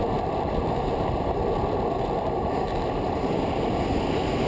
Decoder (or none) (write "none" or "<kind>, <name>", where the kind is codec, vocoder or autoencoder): none